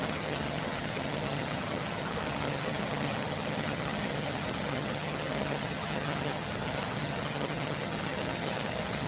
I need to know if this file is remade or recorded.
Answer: remade